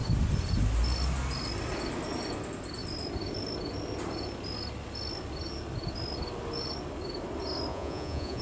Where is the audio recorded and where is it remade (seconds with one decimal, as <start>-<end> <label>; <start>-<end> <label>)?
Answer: 0.0-7.7 recorded; 7.7-8.4 remade